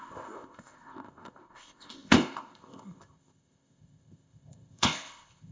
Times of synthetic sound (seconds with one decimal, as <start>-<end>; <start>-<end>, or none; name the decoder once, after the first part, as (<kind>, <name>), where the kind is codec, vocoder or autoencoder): 0.0-5.5 (codec, ZipCodec)